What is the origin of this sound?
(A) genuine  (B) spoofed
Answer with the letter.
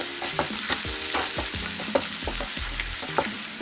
A